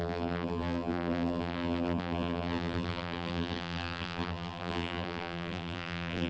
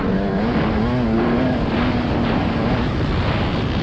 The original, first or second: second